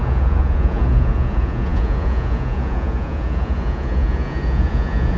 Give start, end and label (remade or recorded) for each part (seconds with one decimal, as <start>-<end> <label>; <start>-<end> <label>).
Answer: 0.0-5.2 remade